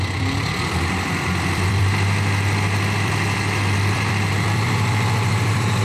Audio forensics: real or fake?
fake